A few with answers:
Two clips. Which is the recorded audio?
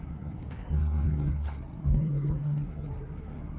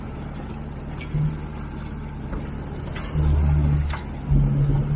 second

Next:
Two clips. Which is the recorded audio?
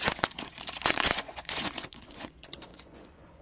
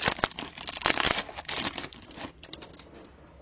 second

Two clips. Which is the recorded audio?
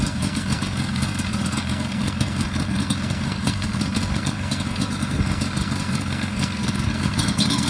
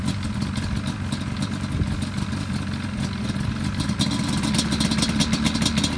second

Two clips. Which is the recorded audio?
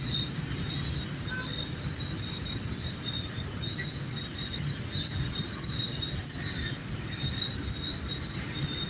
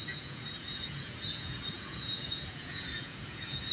first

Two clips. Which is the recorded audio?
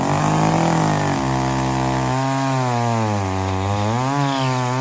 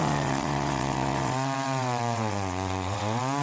first